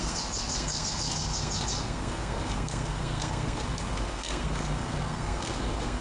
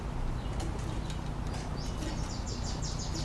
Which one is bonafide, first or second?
second